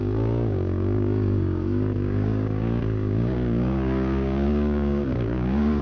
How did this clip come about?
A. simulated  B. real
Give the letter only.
A